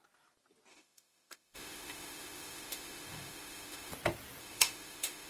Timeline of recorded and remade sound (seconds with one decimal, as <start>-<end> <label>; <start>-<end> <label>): 0.0-0.7 recorded; 0.7-3.9 remade; 3.9-4.4 recorded; 4.4-5.3 remade